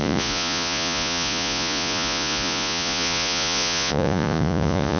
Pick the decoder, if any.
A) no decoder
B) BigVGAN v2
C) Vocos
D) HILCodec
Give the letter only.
C